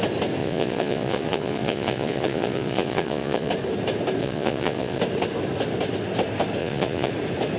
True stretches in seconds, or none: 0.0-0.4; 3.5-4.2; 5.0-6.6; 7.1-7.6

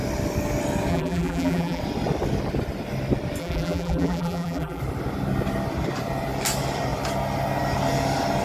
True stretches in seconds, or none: 0.0-0.9; 1.8-3.4; 4.8-8.4